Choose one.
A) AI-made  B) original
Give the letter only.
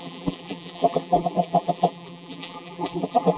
A